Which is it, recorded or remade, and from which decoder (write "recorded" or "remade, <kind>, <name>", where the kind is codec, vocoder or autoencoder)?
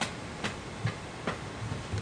recorded